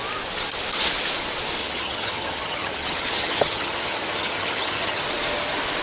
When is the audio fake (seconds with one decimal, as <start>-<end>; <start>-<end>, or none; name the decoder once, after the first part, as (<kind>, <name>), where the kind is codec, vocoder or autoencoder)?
1.6-5.0 (vocoder, HiFi-GAN)